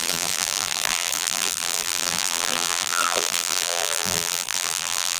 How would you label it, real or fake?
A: fake